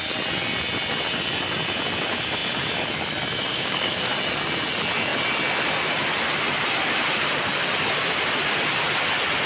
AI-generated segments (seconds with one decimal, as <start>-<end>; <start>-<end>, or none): 3.5-4.1